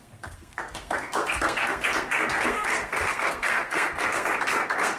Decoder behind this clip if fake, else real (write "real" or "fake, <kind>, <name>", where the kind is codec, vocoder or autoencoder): fake, codec, SNAC